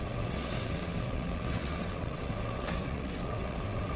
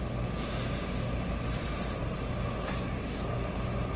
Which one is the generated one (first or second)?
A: first